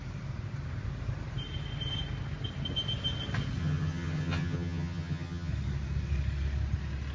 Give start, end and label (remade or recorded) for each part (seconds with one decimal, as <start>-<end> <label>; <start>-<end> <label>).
0.0-3.6 recorded; 3.6-5.5 remade; 5.5-7.1 recorded